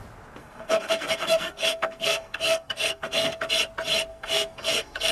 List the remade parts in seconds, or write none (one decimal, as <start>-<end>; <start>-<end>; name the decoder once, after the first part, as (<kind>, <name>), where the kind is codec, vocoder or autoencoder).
0.4-3.5 (codec, SNAC); 4.1-5.1